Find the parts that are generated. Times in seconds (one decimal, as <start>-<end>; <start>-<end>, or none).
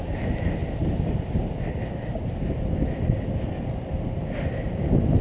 none